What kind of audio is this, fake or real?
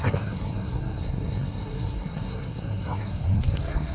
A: fake